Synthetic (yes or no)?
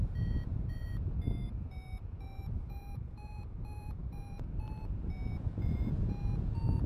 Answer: yes